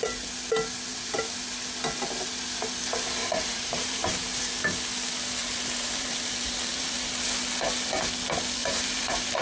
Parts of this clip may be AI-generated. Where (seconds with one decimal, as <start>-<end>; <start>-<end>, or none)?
0.9-1.5; 3.2-4.4; 5.4-7.2; 8.6-9.4